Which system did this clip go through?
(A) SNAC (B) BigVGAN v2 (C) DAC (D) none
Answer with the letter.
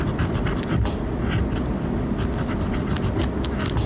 D